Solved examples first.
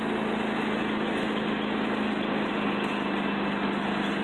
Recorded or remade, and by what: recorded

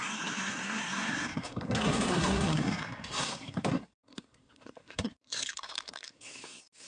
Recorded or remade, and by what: remade, codec, SNAC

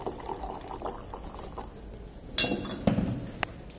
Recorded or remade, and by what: recorded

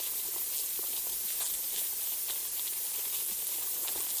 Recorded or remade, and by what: recorded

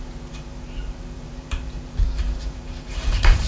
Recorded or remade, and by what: remade, vocoder, BigVGAN v2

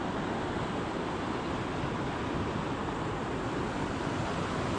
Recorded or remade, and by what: recorded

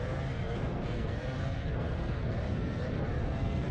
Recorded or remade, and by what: remade, codec, SNAC